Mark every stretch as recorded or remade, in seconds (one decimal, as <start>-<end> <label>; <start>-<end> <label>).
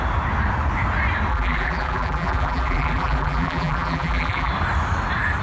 0.0-1.3 recorded; 1.3-4.5 remade; 4.5-5.4 recorded